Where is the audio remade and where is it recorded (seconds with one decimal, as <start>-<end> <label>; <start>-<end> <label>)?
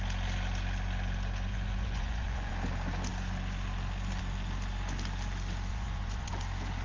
0.0-1.5 recorded; 1.5-2.5 remade; 2.5-5.7 recorded; 5.7-6.3 remade; 6.3-6.8 recorded